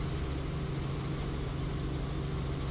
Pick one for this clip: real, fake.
real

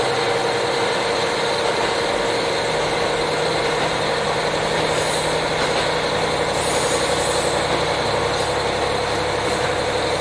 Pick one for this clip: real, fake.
real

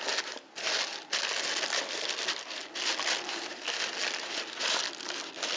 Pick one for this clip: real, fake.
real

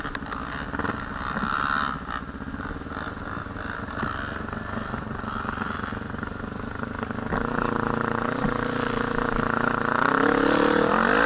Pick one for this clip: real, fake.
real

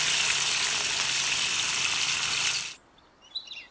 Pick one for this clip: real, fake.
real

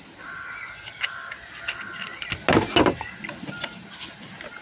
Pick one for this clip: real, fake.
real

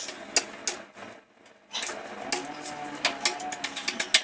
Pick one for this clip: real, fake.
real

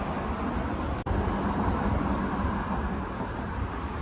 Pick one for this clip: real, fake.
real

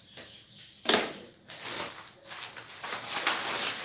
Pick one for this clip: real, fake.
real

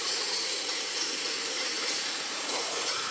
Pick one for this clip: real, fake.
fake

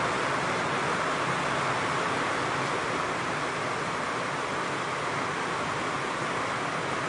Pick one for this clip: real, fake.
real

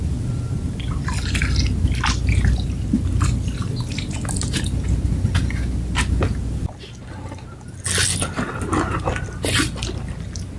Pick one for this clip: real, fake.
real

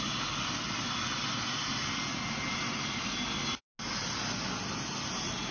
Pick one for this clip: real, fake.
real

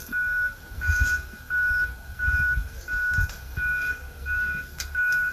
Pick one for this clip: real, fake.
fake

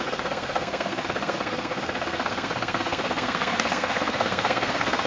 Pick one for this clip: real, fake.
fake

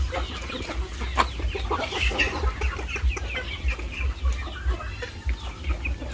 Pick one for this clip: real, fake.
real